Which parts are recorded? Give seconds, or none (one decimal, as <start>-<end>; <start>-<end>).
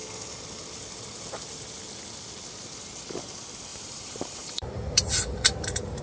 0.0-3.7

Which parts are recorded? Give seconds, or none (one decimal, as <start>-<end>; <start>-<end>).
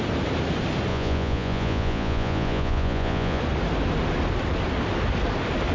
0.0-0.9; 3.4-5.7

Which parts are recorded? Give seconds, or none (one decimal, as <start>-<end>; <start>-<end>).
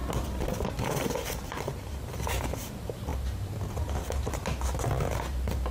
3.1-3.8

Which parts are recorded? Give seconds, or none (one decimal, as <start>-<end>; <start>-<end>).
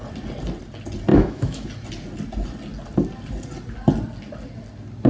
0.0-1.1; 1.7-5.1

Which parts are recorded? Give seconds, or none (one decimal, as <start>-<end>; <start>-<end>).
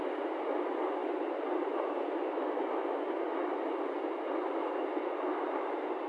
0.0-6.1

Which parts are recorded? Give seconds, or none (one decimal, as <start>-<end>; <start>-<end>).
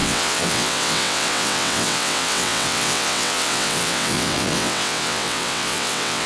none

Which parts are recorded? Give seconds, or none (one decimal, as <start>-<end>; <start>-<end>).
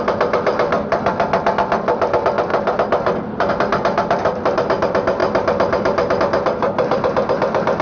none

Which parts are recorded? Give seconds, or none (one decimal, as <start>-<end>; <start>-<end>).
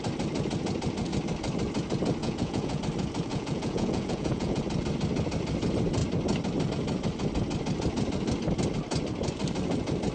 0.0-2.2; 2.8-3.3; 4.6-10.1